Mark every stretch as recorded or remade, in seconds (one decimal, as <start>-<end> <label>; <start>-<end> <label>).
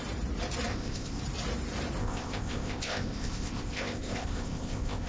0.0-0.7 recorded; 0.7-1.2 remade; 1.2-2.0 recorded; 2.0-5.1 remade